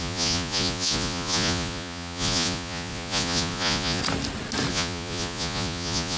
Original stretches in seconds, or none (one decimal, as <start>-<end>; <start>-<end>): 4.0-4.7

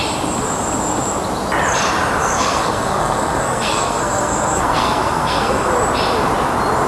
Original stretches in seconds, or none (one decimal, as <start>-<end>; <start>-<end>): 0.0-2.2; 5.7-6.9

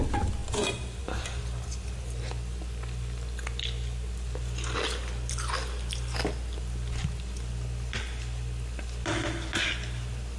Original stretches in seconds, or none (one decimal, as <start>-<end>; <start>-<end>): 0.0-10.4

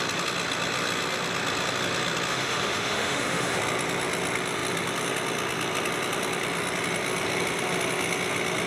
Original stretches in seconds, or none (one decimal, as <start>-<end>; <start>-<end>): 0.0-2.3; 3.6-8.7

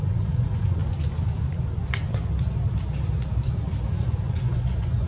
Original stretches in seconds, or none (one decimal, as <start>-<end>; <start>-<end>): 0.8-3.9

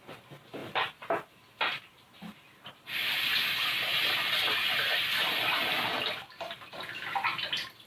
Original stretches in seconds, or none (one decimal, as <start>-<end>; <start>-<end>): 0.0-0.6; 2.7-4.9; 7.4-7.9

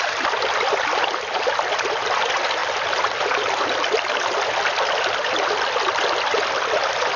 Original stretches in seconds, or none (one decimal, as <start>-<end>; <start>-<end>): 0.0-7.2

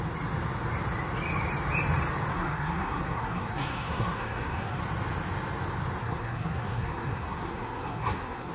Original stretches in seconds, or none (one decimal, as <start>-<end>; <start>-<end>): 0.0-2.3; 4.8-6.0